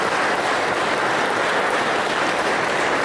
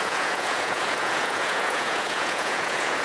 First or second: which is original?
first